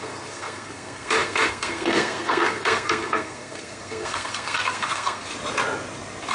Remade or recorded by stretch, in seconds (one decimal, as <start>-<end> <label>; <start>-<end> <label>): 0.0-5.3 remade; 5.3-6.3 recorded